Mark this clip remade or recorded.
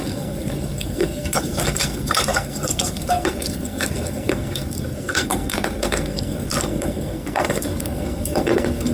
remade